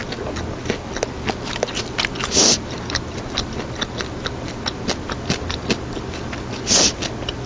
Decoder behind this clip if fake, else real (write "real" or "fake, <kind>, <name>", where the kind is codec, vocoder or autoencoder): real